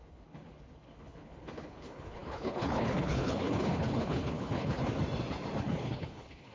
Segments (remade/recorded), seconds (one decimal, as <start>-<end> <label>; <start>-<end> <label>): 0.0-4.8 remade; 4.8-5.6 recorded; 5.6-6.5 remade